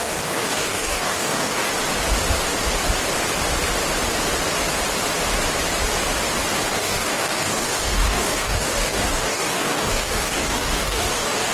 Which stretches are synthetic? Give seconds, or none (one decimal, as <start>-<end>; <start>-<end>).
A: 0.0-1.7; 6.7-11.5